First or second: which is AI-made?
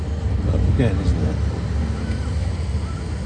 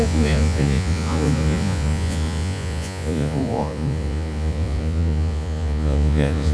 second